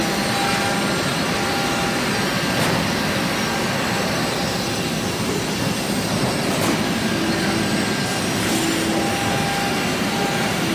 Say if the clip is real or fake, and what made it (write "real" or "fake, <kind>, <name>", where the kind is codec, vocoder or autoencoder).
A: real